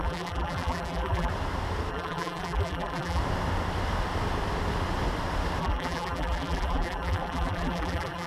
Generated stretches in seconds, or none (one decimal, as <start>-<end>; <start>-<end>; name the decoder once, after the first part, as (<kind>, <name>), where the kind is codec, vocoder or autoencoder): 0.0-1.3 (vocoder, BigVGAN v2); 1.9-3.2; 5.6-8.3